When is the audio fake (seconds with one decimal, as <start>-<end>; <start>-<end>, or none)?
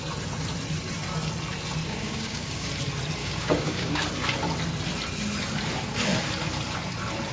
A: 1.8-2.7; 3.2-4.0